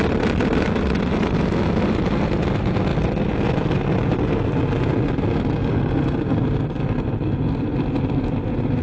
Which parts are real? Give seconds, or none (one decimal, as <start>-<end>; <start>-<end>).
0.0-8.8